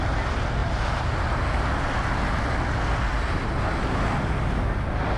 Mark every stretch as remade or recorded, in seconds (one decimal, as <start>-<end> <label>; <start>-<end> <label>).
0.0-0.6 recorded; 0.6-1.6 remade; 1.6-5.2 recorded